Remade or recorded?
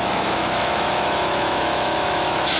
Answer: remade